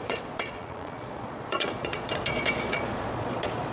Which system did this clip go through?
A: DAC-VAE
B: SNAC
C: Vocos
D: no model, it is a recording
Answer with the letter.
C